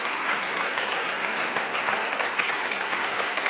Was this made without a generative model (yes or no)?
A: no